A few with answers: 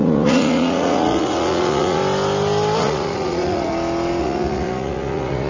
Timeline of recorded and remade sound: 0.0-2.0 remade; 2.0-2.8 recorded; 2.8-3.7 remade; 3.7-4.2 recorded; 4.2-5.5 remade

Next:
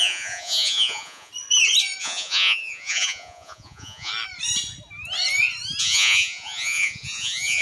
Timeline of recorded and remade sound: 0.0-1.3 remade; 1.3-2.0 recorded; 2.0-4.1 remade; 4.1-5.8 recorded; 5.8-7.6 remade

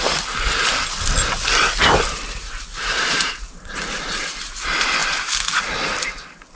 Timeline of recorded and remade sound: 0.0-2.7 recorded; 2.7-3.3 remade; 3.3-6.6 recorded

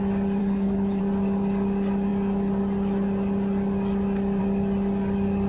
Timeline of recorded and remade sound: 0.0-0.4 recorded; 0.4-1.0 remade; 1.0-5.5 recorded

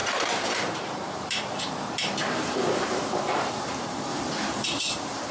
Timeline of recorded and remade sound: 0.0-5.3 remade

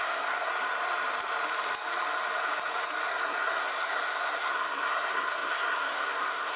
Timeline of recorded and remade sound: 0.0-0.5 remade; 0.5-3.1 recorded; 3.1-6.6 remade